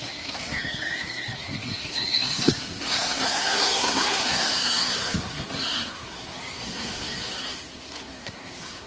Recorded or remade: remade